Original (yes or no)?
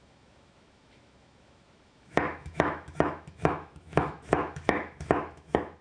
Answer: no